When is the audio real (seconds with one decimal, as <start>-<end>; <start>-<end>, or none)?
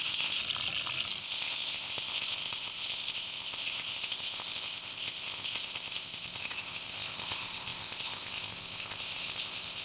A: 0.4-1.2